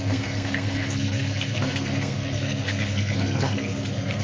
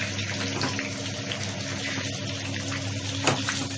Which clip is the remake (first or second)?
first